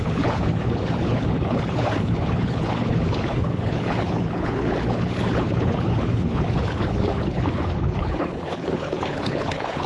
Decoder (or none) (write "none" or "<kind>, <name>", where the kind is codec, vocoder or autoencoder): codec, HILCodec